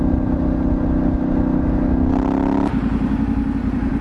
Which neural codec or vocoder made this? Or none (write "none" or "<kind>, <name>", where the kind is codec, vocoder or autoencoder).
none